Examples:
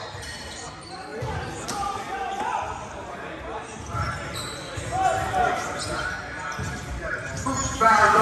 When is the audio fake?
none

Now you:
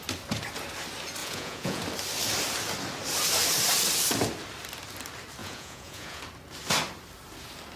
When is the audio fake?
1.2-1.8 (vocoder, Vocos); 5.4-6.2